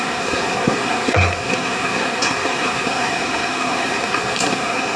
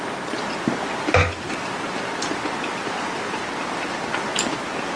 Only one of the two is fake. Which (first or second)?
first